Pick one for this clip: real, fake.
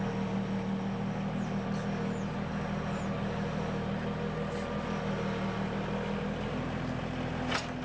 real